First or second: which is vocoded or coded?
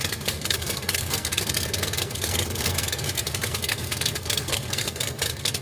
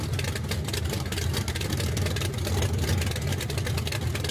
first